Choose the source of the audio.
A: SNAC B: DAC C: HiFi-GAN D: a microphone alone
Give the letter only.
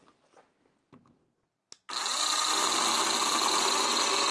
D